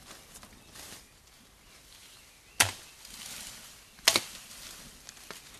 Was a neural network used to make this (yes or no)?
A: no